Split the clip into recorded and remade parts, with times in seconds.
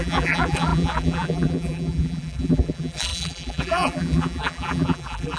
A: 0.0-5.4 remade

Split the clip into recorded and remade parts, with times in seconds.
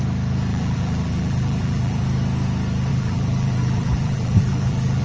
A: 0.0-0.5 recorded; 0.5-2.0 remade; 2.0-2.9 recorded; 2.9-5.0 remade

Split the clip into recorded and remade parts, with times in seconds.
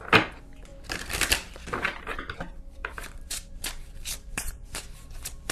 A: 0.0-2.8 recorded; 2.8-5.1 remade; 5.1-5.5 recorded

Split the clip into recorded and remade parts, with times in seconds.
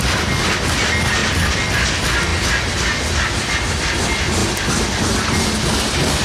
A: 0.0-6.2 recorded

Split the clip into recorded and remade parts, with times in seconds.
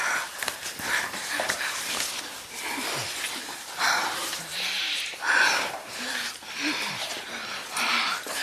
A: 0.0-0.6 recorded; 0.6-1.8 remade; 1.8-4.2 recorded; 4.2-6.2 remade; 6.2-8.4 recorded